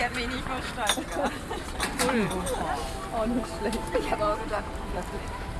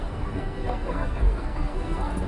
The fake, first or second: second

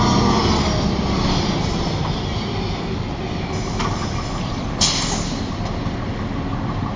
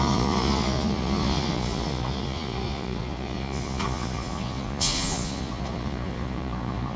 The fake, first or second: second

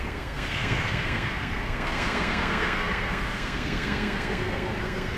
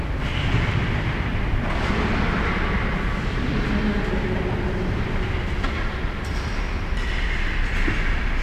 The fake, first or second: first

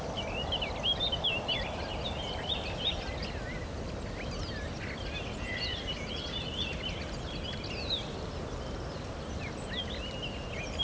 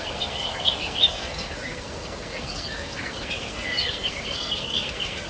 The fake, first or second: second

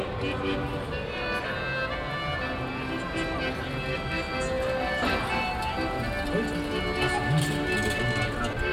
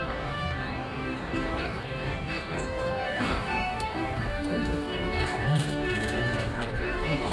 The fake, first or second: second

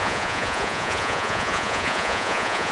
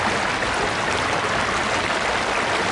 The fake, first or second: first